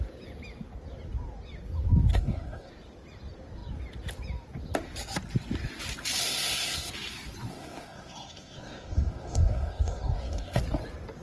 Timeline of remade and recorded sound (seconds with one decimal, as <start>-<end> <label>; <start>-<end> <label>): 0.0-2.1 recorded; 2.1-2.7 remade; 2.7-6.2 recorded; 6.2-6.9 remade; 6.9-7.5 recorded; 7.5-10.6 remade; 10.6-11.2 recorded